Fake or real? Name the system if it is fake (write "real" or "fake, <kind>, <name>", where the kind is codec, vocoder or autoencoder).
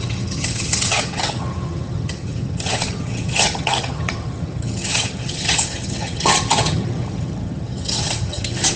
fake, vocoder, HiFi-GAN